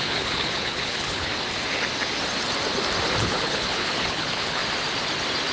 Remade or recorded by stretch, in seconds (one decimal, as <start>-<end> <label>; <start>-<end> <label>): 0.0-1.3 remade; 1.3-3.2 recorded; 3.2-4.6 remade; 4.6-5.5 recorded